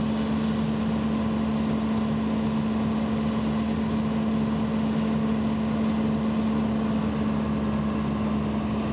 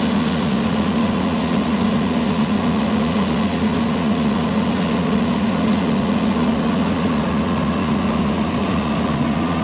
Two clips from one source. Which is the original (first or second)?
first